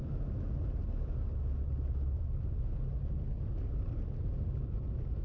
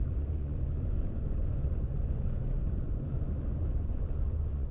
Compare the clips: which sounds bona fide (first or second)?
first